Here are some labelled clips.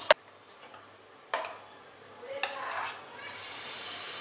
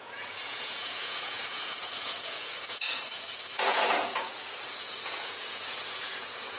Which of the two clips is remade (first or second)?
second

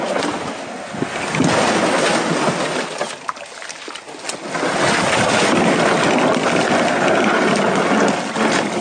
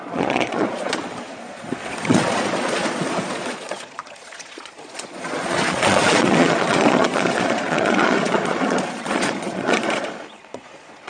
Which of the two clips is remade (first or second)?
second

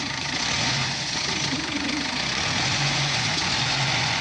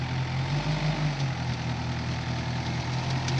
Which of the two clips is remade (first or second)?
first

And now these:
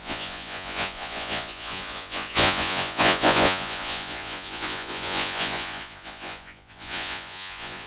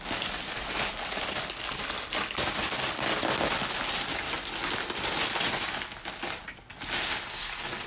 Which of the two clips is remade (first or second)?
first